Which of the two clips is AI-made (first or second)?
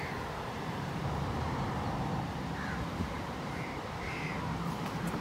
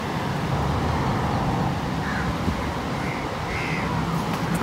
first